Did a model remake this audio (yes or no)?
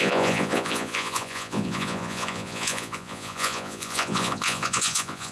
yes